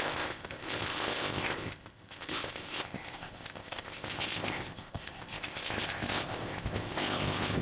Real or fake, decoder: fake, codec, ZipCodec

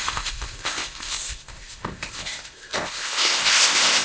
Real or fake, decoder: fake, codec, ZipCodec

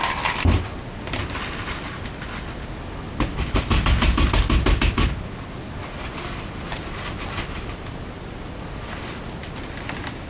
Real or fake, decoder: real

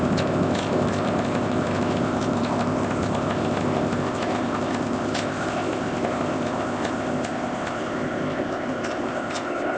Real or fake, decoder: fake, codec, ZipCodec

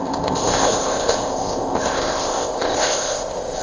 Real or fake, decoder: fake, codec, ZipCodec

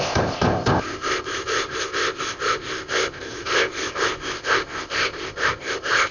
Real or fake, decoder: fake, codec, ZipCodec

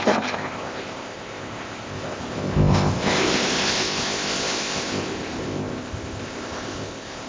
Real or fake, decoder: fake, codec, ZipCodec